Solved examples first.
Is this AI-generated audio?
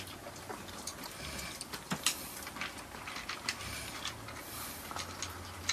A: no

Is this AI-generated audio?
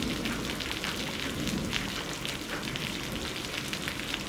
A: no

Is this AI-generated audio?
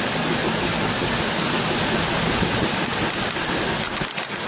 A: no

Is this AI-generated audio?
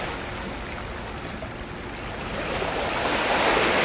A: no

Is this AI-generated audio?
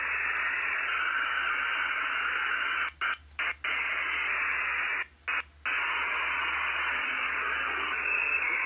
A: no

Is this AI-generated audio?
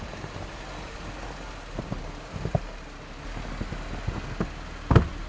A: no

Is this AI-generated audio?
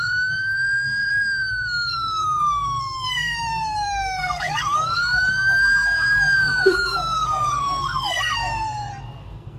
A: yes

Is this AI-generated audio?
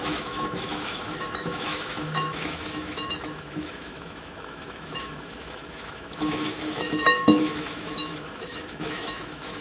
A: yes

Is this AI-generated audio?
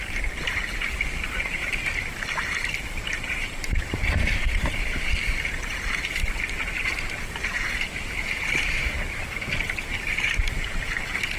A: yes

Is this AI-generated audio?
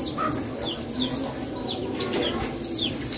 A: no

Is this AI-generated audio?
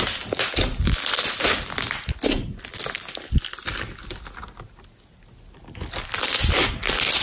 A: no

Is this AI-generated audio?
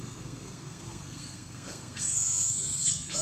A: yes